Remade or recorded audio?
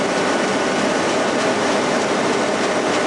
remade